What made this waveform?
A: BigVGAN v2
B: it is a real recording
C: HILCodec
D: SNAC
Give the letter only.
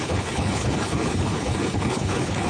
C